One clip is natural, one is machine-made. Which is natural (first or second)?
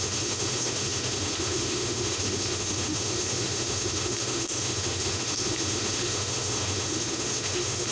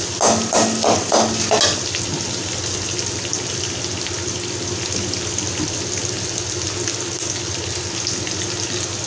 second